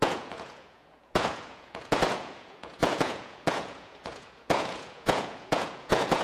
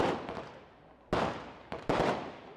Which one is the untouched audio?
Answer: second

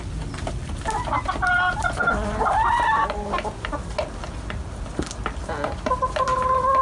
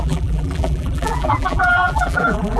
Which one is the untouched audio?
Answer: first